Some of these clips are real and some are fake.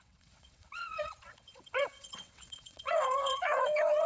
fake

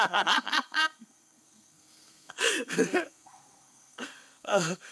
fake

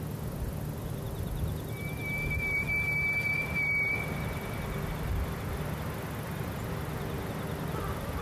real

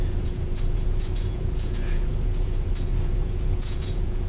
fake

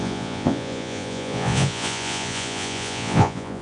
fake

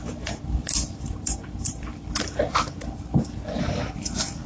fake